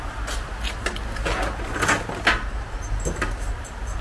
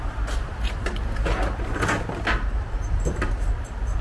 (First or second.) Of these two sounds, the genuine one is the first